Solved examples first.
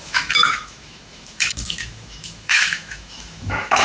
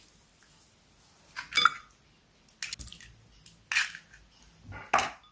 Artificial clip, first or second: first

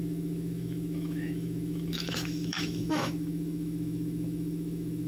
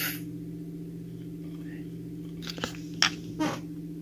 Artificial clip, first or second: first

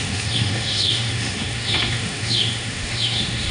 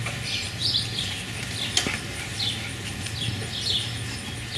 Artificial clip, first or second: first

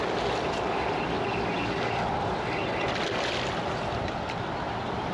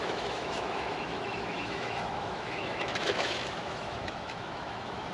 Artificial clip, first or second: second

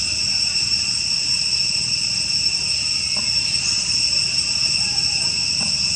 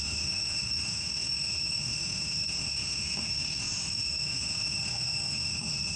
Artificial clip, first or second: second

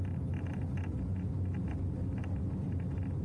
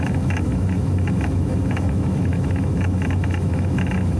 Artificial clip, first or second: second